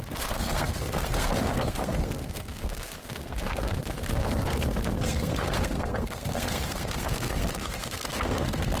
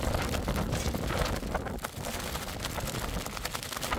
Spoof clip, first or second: first